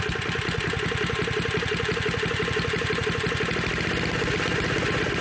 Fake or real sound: real